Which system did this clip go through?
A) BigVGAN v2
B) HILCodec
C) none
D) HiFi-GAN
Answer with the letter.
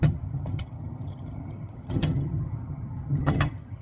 D